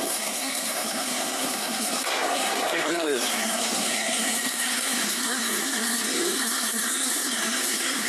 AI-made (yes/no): yes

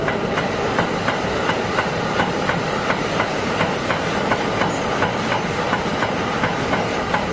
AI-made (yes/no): yes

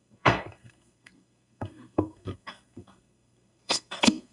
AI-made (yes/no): yes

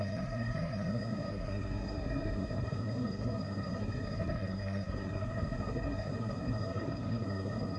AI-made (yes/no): yes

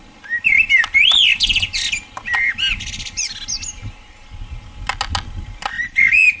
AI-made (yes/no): no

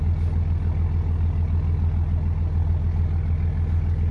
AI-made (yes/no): no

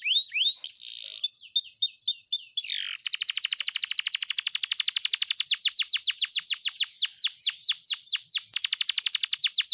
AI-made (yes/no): no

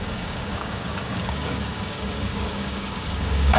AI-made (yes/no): yes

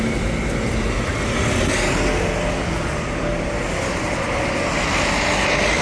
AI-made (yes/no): no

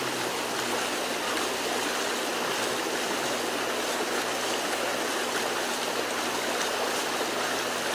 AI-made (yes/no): no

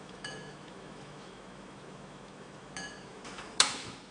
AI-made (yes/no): yes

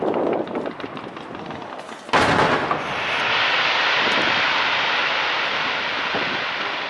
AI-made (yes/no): no